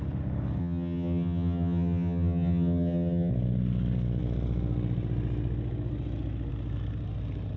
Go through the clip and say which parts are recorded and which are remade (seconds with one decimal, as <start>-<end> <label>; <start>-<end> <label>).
0.0-0.6 recorded; 0.6-3.3 remade; 3.3-7.6 recorded